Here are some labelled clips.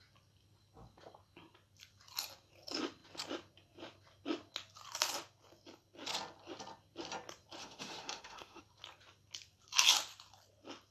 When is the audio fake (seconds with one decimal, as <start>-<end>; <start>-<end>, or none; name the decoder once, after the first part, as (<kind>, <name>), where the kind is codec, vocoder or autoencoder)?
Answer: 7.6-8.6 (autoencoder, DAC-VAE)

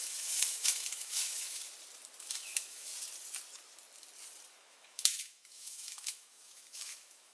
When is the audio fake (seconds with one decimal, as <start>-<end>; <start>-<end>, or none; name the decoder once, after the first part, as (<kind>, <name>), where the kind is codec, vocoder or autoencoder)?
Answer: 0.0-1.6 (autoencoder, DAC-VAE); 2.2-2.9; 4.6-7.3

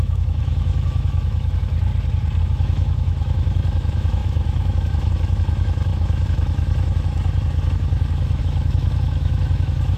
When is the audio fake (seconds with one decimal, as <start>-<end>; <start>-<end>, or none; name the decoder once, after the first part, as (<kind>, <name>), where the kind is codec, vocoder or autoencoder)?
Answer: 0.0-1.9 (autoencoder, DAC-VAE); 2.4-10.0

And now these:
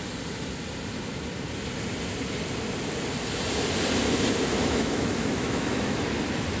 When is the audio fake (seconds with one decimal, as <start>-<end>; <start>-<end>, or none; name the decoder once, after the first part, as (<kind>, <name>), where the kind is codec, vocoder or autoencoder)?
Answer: 4.6-6.1 (autoencoder, DAC-VAE)

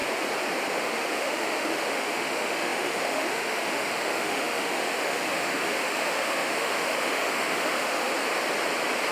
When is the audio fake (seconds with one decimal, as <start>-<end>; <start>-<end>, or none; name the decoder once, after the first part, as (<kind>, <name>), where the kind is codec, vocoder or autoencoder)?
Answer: 0.7-8.1 (autoencoder, DAC-VAE)

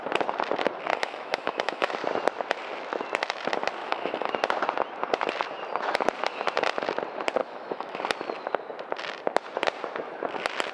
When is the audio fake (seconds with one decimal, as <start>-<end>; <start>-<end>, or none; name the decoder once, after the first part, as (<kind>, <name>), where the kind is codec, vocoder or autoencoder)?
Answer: 0.9-1.9 (autoencoder, DAC-VAE); 3.8-4.3; 7.4-8.0